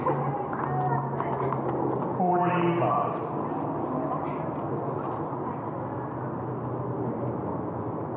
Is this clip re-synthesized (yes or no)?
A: no